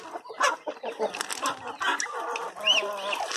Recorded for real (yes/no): yes